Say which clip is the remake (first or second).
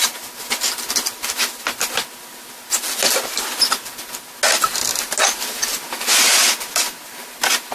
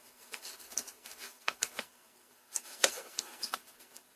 second